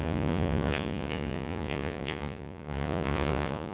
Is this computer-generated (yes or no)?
yes